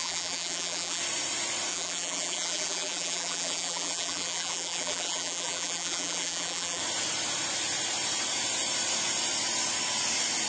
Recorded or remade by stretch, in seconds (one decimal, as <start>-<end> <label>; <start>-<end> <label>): 0.0-1.0 remade; 1.0-1.7 recorded; 1.7-6.8 remade; 6.8-10.5 recorded